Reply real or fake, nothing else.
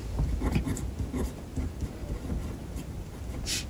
real